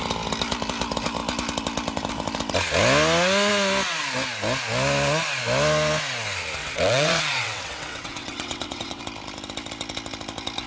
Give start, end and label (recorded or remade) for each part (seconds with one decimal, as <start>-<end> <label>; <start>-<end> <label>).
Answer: 0.0-6.6 recorded; 6.6-9.0 remade; 9.0-10.7 recorded